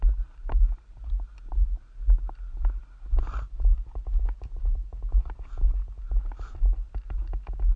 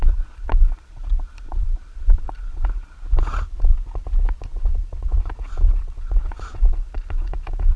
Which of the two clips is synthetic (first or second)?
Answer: second